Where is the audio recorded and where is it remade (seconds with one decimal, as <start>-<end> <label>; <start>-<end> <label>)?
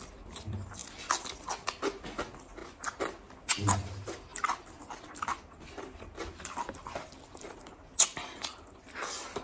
0.0-9.4 recorded